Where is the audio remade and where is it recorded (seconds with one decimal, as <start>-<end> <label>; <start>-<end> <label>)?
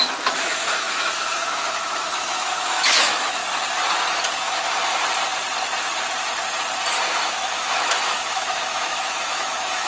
0.0-3.4 remade; 3.4-4.3 recorded; 4.3-4.9 remade; 4.9-7.3 recorded; 7.3-9.9 remade